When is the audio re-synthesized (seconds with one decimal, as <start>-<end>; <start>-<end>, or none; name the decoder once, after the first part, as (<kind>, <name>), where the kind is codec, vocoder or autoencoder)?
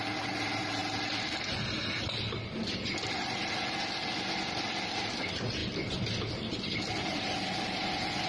none